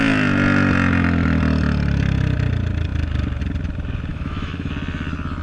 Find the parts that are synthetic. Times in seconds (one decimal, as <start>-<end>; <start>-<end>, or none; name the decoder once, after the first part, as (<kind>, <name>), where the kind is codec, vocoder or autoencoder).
4.1-4.7 (autoencoder, DAC-VAE)